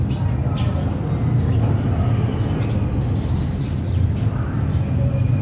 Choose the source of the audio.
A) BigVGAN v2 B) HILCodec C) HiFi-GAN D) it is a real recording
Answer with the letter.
D